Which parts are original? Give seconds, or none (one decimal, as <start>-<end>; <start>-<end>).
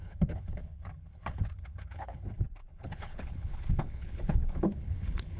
none